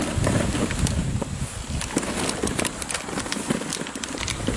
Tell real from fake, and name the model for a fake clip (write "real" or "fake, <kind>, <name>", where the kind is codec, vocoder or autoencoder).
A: real